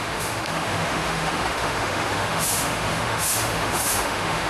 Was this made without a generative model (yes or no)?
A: no